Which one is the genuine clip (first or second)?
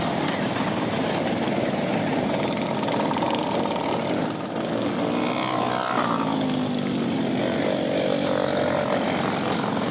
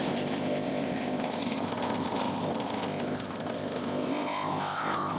first